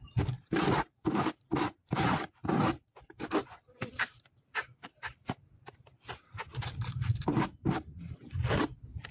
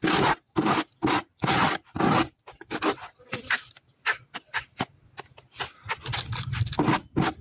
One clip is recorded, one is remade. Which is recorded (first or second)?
second